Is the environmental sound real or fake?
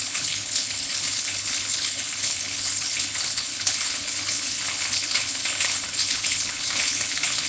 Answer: fake